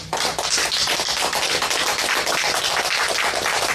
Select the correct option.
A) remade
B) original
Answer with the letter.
B